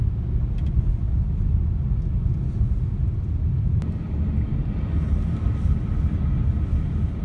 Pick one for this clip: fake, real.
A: real